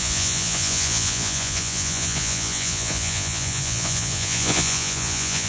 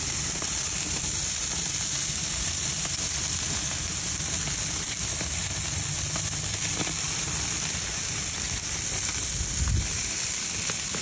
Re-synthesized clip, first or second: first